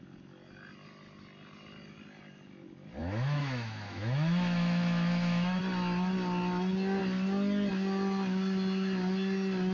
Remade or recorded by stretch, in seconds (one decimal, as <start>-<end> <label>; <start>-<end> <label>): 0.0-3.0 recorded; 3.0-5.6 remade; 5.6-9.7 recorded